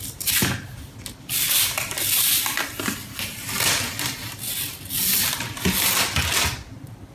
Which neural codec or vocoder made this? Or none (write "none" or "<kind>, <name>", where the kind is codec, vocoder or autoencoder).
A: none